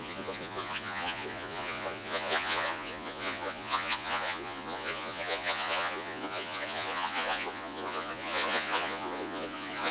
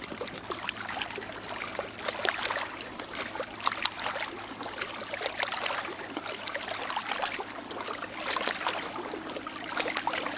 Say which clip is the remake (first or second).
first